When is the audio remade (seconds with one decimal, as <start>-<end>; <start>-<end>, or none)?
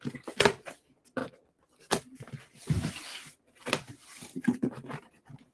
3.1-5.1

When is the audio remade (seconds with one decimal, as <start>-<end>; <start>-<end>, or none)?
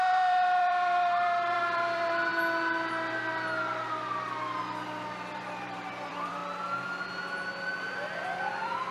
0.0-2.3; 5.3-6.4; 7.5-8.9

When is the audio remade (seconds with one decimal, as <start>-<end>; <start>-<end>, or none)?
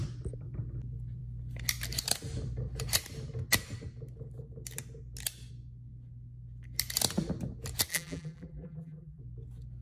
7.9-9.2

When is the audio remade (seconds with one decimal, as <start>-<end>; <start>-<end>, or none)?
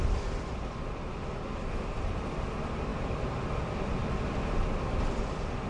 0.0-4.0; 5.3-5.7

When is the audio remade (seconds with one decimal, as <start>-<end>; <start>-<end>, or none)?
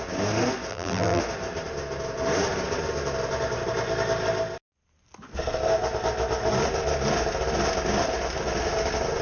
0.7-1.2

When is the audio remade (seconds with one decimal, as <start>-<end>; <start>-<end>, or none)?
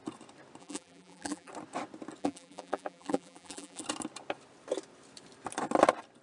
0.6-1.5; 2.2-3.8